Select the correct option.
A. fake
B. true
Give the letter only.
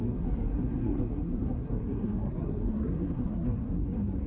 A